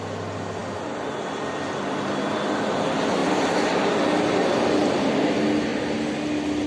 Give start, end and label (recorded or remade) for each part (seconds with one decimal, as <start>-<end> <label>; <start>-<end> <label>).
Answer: 0.0-6.7 recorded